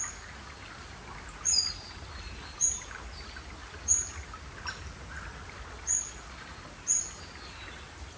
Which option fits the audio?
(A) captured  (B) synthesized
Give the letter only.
A